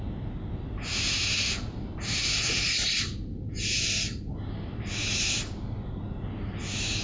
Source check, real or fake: real